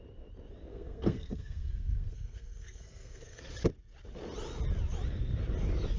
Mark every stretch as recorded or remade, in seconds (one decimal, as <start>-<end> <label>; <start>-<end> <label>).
0.0-0.7 recorded; 0.7-3.4 remade; 3.4-6.0 recorded